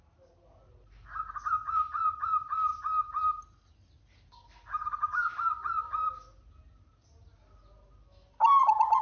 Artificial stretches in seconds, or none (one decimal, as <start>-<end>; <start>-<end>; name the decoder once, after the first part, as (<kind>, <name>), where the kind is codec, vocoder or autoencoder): none